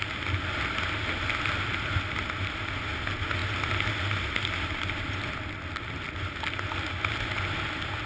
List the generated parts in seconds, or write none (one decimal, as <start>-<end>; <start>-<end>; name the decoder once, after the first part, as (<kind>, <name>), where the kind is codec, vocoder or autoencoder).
none